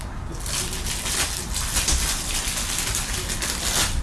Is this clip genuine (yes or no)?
yes